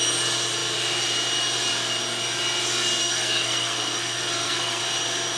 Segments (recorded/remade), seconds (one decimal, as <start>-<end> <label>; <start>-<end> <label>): 0.0-3.0 recorded; 3.0-4.8 remade; 4.8-5.4 recorded